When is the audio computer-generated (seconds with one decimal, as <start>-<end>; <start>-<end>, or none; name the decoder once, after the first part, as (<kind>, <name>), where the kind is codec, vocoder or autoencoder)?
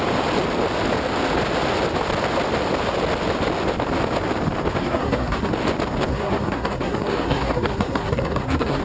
4.8-5.5 (codec, SNAC); 6.1-8.8